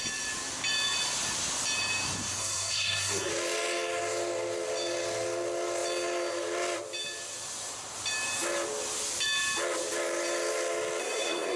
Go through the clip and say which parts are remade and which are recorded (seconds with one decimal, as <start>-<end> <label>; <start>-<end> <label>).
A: 0.0-2.4 recorded; 2.4-3.3 remade; 3.3-11.0 recorded; 11.0-11.6 remade